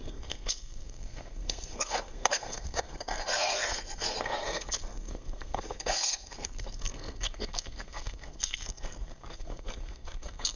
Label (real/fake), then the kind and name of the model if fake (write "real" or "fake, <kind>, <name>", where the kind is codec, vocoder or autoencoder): fake, codec, SNAC